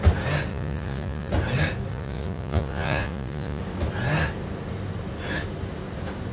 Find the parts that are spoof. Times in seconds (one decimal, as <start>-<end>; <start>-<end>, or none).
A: 0.5-1.3; 1.9-3.6